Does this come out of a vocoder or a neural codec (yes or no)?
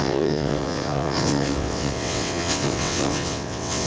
yes